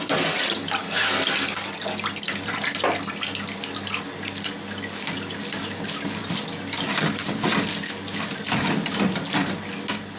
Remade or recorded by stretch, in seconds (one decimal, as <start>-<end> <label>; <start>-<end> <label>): 0.0-10.2 recorded